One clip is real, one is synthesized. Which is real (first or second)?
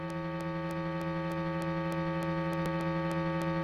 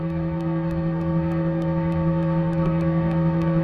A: first